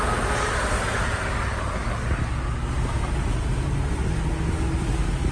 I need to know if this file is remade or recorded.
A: recorded